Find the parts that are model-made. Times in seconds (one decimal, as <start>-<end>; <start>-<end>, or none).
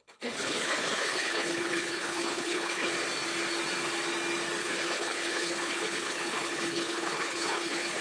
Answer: 0.0-2.9; 4.6-8.0